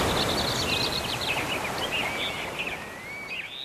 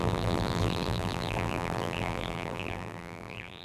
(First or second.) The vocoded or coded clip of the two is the second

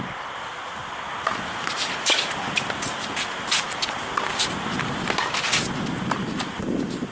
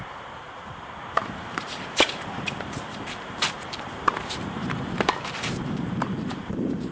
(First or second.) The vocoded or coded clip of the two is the second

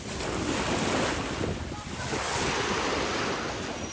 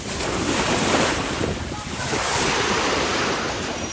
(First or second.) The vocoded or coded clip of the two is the second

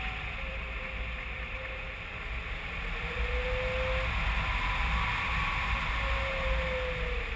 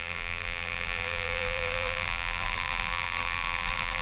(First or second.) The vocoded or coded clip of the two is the second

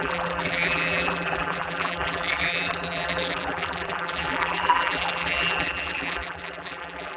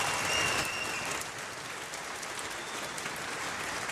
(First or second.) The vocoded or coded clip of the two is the first